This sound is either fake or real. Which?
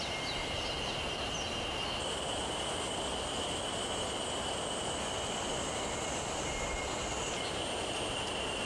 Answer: real